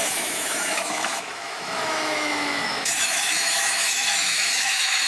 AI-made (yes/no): yes